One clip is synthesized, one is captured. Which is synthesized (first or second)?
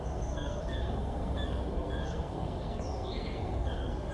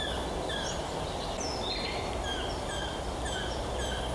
first